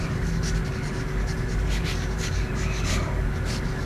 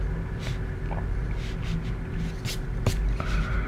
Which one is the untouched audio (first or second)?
second